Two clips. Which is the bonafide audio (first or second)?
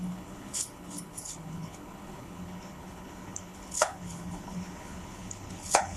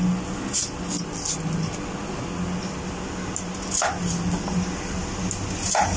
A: second